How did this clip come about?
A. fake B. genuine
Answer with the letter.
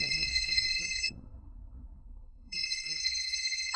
A